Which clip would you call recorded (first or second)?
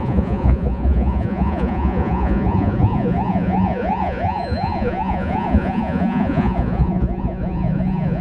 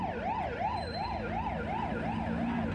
second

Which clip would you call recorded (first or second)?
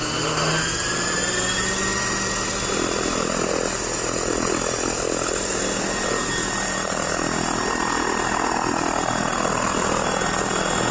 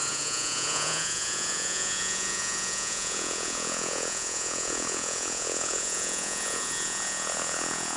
first